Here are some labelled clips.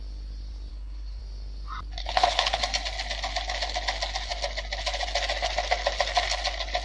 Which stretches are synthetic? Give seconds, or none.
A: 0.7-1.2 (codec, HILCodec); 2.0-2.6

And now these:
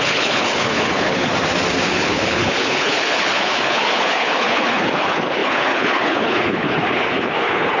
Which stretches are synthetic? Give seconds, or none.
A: 0.0-1.3 (codec, HILCodec); 1.9-7.8

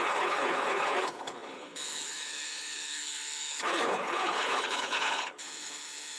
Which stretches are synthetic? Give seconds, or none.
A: 0.0-6.2 (codec, HILCodec)

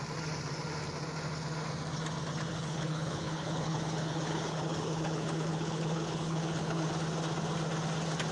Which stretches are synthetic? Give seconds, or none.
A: 2.5-6.9 (codec, HILCodec)